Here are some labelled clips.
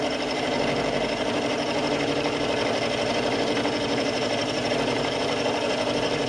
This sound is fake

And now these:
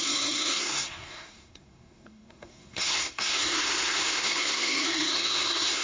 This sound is fake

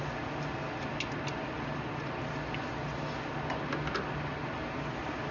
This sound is real